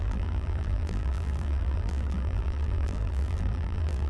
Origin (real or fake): fake